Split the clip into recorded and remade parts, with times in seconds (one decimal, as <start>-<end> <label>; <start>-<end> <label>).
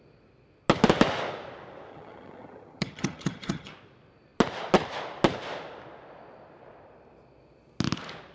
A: 0.0-1.9 recorded; 1.9-3.7 remade; 3.7-8.3 recorded